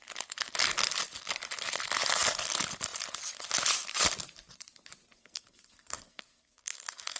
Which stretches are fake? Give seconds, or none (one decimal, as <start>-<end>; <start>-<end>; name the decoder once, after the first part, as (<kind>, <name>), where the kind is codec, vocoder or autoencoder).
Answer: 5.2-7.2 (codec, SNAC)